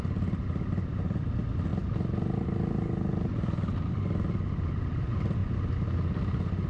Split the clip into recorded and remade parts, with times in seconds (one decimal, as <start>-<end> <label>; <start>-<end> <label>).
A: 0.0-6.7 recorded